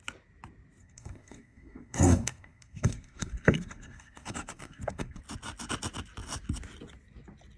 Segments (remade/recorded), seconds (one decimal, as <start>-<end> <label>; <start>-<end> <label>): 0.0-0.8 recorded; 0.8-5.2 remade; 5.2-7.6 recorded